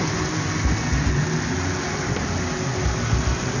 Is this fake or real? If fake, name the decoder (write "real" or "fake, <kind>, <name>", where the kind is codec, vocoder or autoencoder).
real